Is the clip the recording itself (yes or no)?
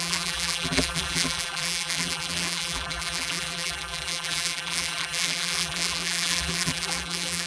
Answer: no